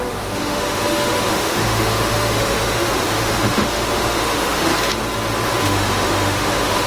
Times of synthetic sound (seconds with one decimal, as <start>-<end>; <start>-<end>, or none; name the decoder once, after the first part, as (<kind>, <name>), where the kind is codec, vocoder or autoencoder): 0.0-4.7 (autoencoder, DAC-VAE); 5.6-6.9